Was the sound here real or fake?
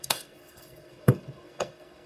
fake